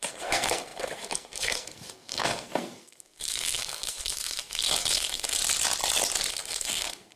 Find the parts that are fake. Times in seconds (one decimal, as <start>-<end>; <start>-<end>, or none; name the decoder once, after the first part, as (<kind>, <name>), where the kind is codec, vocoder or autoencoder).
0.0-5.4 (codec, SNAC); 6.3-7.2